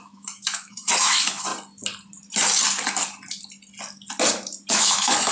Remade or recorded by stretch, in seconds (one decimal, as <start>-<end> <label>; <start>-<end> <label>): 0.0-1.5 remade; 1.5-4.7 recorded; 4.7-5.3 remade